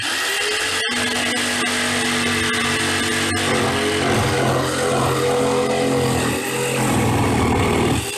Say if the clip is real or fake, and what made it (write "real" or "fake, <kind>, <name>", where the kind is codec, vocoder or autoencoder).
real